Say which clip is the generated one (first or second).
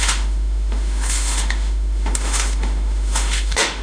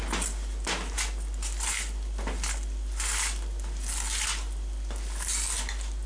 first